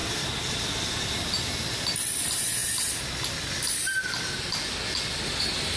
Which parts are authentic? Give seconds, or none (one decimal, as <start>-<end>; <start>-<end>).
0.0-5.8